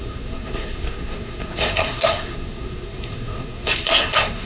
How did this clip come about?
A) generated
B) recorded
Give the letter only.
A